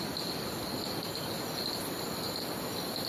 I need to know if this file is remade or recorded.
recorded